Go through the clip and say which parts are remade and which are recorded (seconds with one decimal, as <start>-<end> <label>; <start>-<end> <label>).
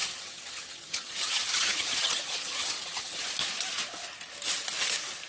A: 0.0-3.2 remade; 3.2-5.3 recorded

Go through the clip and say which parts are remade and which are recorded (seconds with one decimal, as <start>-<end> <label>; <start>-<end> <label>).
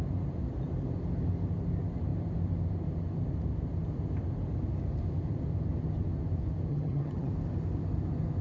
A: 0.0-6.7 recorded; 6.7-7.3 remade; 7.3-8.4 recorded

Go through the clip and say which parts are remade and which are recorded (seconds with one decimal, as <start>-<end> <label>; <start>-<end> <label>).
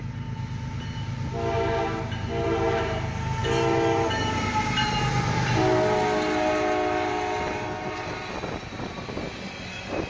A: 0.0-10.1 recorded